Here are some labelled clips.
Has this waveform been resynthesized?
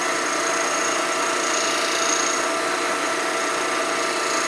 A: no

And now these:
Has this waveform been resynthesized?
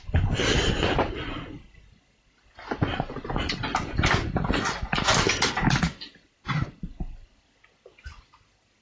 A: no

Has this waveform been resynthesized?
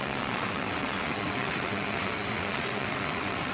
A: yes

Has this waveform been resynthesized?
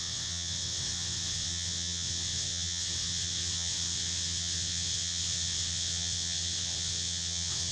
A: yes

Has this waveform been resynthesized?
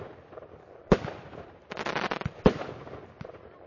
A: no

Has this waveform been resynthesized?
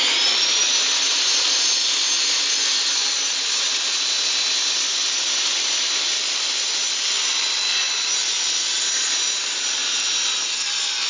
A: no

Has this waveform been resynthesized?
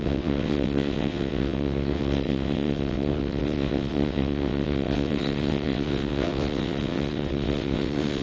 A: yes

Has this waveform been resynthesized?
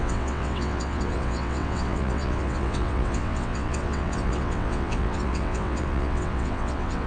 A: yes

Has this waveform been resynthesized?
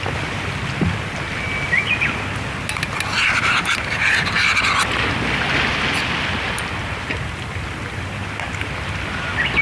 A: no